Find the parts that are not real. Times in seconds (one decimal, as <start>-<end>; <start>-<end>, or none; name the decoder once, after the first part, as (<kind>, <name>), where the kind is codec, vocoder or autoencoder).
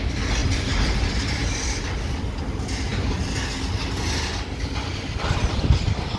none